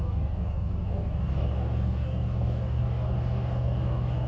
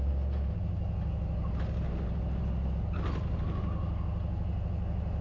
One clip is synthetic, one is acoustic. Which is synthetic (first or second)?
first